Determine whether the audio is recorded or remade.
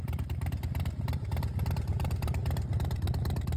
recorded